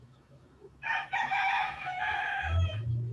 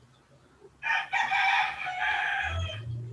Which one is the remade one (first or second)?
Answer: first